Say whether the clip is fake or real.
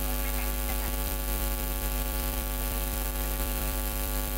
fake